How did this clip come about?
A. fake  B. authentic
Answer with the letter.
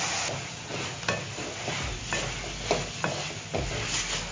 B